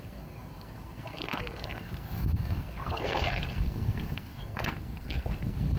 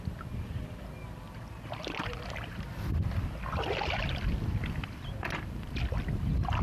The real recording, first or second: second